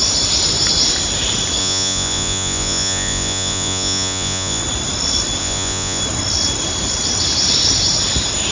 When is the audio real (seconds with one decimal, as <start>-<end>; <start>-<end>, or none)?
0.0-1.6; 4.6-5.4; 6.0-8.5